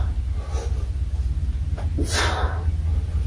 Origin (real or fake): real